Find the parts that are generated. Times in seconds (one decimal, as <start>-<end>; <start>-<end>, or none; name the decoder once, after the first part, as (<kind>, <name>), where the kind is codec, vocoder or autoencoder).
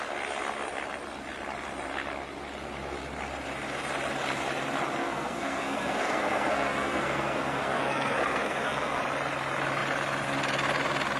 5.0-9.0 (codec, SNAC)